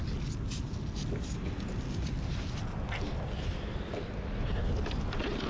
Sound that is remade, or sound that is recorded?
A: recorded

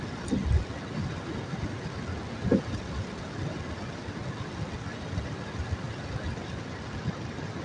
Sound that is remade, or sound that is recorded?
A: recorded